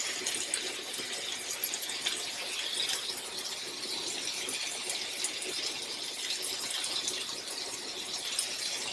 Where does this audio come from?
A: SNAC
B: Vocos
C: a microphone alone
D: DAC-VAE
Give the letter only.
C